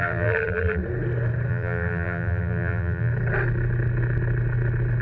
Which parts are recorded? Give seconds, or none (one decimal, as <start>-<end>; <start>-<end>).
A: 0.8-1.5; 3.1-5.0